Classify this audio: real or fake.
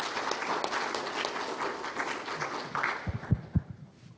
real